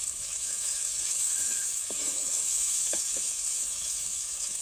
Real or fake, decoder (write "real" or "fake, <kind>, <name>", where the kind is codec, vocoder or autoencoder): fake, autoencoder, DAC-VAE